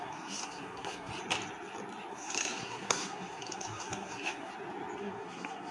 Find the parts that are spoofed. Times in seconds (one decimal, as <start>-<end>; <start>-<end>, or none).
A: 0.0-1.1; 2.1-4.5; 5.0-5.7